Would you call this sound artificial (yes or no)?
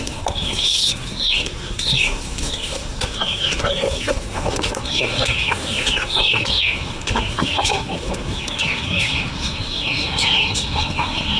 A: yes